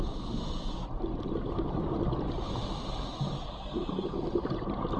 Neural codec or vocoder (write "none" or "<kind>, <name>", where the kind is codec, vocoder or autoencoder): none